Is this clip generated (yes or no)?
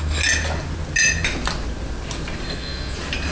no